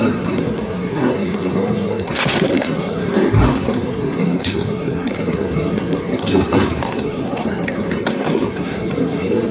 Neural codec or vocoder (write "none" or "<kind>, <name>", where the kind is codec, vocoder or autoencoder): codec, SNAC